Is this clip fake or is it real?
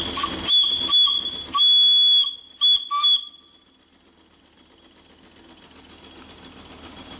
real